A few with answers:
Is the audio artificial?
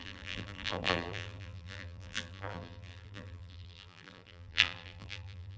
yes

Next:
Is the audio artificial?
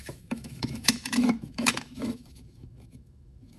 yes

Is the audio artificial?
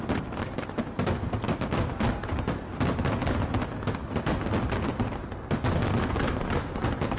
no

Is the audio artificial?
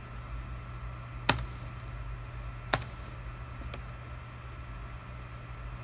no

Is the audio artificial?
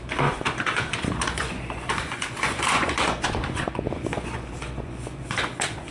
yes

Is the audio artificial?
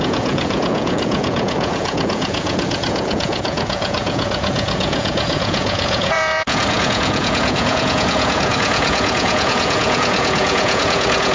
yes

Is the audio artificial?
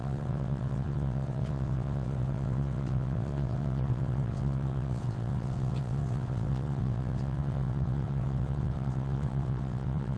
yes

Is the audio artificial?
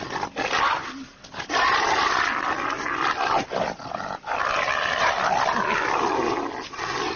no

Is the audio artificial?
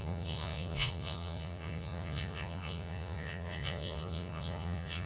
yes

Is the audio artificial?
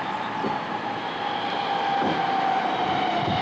no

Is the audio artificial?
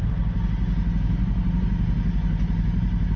no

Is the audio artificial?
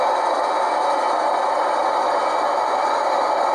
no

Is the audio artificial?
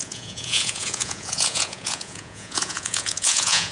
yes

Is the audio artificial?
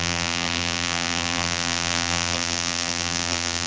yes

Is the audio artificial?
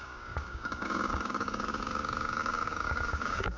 yes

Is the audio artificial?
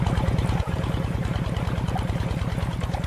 no